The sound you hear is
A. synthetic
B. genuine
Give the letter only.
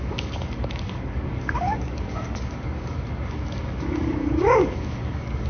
A